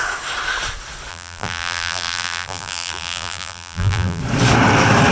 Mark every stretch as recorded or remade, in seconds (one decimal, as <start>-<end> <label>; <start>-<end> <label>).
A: 0.0-1.1 recorded; 1.1-4.2 remade; 4.2-5.1 recorded